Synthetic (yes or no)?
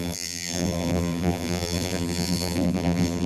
yes